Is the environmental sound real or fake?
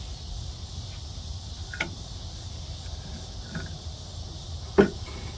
fake